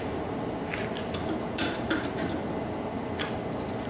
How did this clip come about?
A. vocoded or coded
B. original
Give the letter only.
B